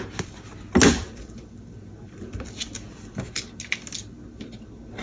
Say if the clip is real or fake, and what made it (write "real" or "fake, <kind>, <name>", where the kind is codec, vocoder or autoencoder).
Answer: real